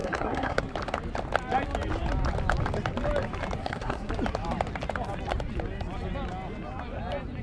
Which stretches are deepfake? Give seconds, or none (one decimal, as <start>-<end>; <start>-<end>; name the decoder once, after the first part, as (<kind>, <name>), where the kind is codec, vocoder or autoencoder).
0.0-0.6 (codec, SNAC); 3.6-4.1